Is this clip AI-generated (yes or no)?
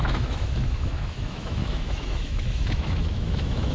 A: yes